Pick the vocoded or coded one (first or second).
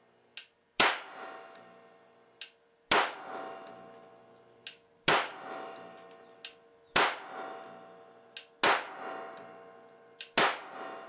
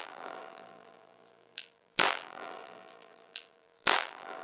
second